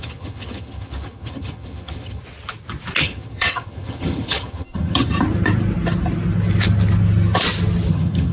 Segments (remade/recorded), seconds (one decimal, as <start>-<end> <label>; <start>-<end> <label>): 0.0-2.2 remade; 2.2-3.0 recorded; 3.0-5.1 remade; 5.1-7.9 recorded; 7.9-8.3 remade

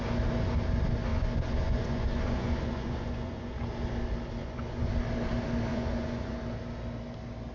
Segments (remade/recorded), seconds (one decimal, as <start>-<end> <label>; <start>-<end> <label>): 0.0-1.1 recorded; 1.1-3.6 remade; 3.6-4.4 recorded; 4.4-4.9 remade; 4.9-5.7 recorded; 5.7-6.4 remade; 6.4-7.5 recorded

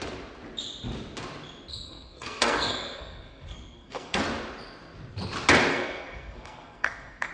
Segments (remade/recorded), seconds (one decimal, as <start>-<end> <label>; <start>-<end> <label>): 0.0-1.7 recorded; 1.7-4.2 remade; 4.2-5.7 recorded; 5.7-7.3 remade

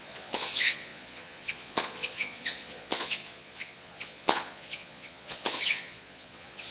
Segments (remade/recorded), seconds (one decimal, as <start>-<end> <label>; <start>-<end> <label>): 0.0-6.7 remade

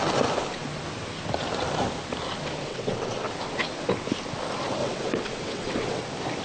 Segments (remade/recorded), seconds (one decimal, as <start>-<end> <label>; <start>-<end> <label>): 0.0-2.7 recorded; 2.7-3.3 remade; 3.3-4.8 recorded; 4.8-6.0 remade; 6.0-6.4 recorded

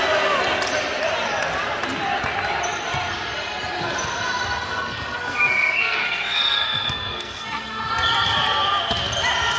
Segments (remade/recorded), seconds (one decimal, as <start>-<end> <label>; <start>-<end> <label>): 0.0-4.6 recorded; 4.6-7.9 remade; 7.9-9.6 recorded